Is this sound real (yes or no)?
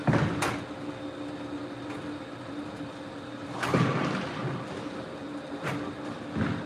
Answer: yes